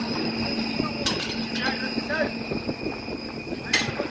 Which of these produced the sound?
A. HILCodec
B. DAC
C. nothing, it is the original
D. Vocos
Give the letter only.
C